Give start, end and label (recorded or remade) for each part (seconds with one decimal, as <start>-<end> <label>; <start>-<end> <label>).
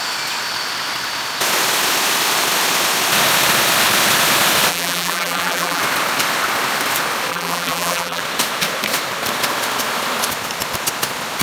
0.0-4.7 recorded; 4.7-5.8 remade; 5.8-7.3 recorded; 7.3-8.2 remade; 8.2-11.4 recorded